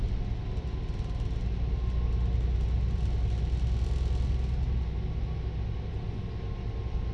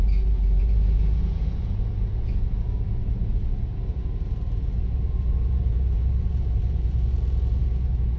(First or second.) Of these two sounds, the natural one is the first